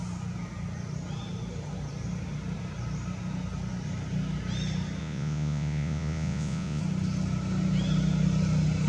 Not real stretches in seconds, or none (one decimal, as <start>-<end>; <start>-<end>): 5.0-6.8

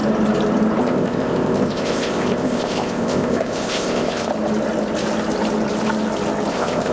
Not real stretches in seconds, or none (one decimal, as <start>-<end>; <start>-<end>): 0.8-4.3; 6.5-6.9

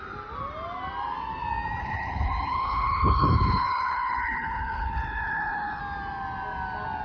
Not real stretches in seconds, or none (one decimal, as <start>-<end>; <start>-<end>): 1.8-5.8

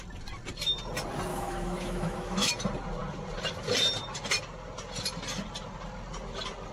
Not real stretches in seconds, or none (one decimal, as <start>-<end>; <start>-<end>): 1.3-2.5

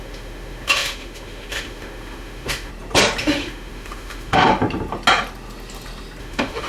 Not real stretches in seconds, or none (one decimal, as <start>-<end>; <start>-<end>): 0.0-2.7; 3.2-4.5; 6.2-6.7